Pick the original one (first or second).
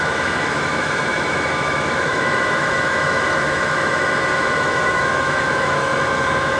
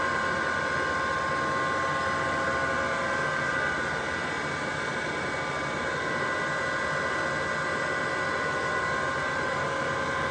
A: second